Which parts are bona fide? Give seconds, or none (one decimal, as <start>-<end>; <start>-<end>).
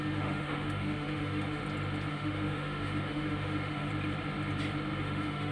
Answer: 1.6-2.1; 3.9-5.0